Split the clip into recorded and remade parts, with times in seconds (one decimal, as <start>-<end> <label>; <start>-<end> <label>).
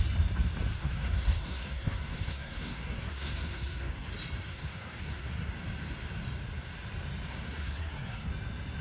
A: 0.0-0.7 recorded; 0.7-4.1 remade; 4.1-4.5 recorded; 4.5-5.5 remade; 5.5-7.3 recorded; 7.3-8.3 remade; 8.3-8.8 recorded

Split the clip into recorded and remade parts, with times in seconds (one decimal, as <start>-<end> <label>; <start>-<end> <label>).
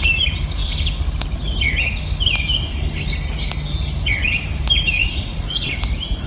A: 0.0-5.0 recorded; 5.0-5.7 remade; 5.7-6.3 recorded